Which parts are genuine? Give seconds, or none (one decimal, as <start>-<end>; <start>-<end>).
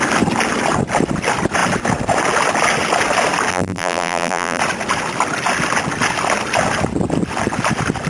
0.0-3.5; 4.6-8.1